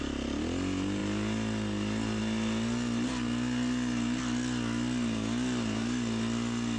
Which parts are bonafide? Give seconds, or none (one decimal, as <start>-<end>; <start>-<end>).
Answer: 0.0-6.8